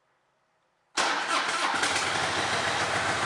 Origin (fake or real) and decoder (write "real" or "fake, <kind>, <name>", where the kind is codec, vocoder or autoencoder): real